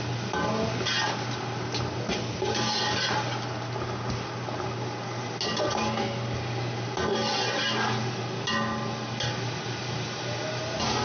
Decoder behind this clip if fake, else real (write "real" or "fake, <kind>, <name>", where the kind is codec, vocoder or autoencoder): real